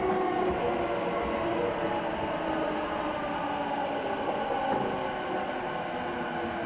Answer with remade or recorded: recorded